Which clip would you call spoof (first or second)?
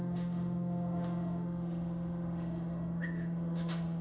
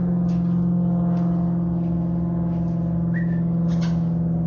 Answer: first